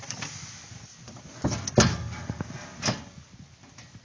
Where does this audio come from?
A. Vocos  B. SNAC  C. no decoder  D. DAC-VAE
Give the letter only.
C